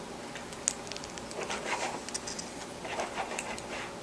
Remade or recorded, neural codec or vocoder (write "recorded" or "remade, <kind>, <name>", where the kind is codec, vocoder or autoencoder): recorded